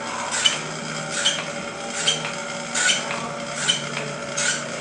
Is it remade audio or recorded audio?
recorded